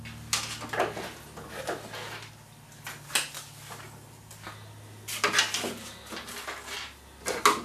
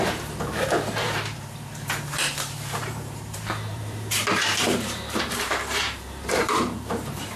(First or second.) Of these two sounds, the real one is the first